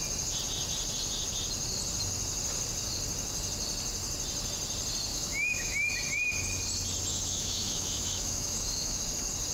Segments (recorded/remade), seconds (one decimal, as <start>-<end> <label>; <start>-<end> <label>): 0.0-5.1 recorded; 5.1-5.9 remade; 5.9-7.1 recorded; 7.1-9.0 remade; 9.0-9.5 recorded